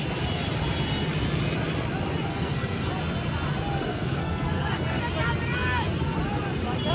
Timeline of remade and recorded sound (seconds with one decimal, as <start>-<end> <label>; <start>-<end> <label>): 0.0-2.3 recorded; 2.3-2.9 remade; 2.9-3.9 recorded; 3.9-5.0 remade; 5.0-6.9 recorded